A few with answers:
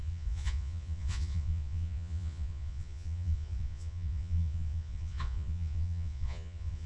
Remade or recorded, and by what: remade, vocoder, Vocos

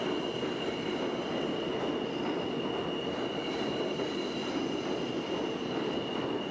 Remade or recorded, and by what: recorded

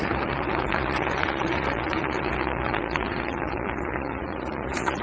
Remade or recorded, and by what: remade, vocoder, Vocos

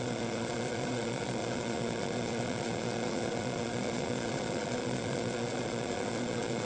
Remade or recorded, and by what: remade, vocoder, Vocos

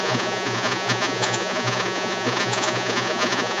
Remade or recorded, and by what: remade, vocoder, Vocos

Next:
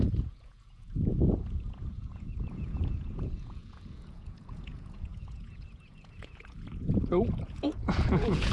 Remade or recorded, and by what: remade, vocoder, Vocos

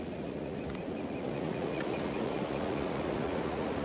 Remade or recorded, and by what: remade, vocoder, Vocos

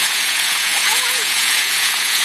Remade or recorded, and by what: remade, vocoder, Vocos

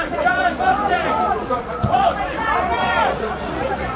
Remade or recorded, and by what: remade, vocoder, Vocos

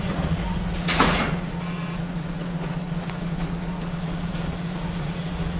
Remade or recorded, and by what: remade, vocoder, Vocos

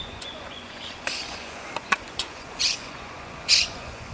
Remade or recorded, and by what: remade, vocoder, Vocos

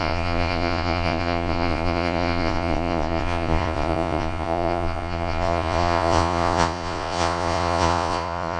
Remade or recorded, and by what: remade, vocoder, Vocos